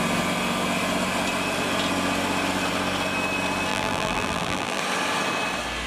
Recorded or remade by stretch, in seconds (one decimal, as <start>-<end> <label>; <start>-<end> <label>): 0.0-3.7 recorded; 3.7-4.8 remade; 4.8-5.9 recorded